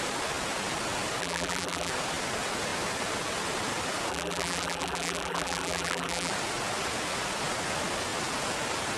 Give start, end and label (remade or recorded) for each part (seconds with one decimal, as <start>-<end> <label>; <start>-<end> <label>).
0.0-1.2 recorded; 1.2-1.9 remade; 1.9-4.1 recorded; 4.1-6.3 remade; 6.3-9.0 recorded